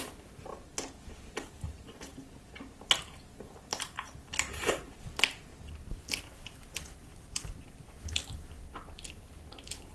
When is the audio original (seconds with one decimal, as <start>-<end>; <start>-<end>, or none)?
0.5-1.3; 2.1-3.2; 5.5-6.0; 7.1-7.9